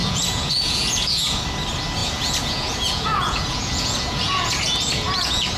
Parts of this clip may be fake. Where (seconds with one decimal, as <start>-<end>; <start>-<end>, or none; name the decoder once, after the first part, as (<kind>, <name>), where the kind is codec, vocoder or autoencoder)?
0.0-1.4 (vocoder, Vocos); 2.0-5.6